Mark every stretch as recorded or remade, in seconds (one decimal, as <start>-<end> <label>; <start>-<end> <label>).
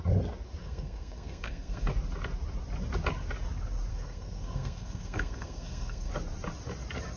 0.0-0.6 recorded; 0.6-1.9 remade; 1.9-3.9 recorded; 3.9-6.1 remade; 6.1-7.2 recorded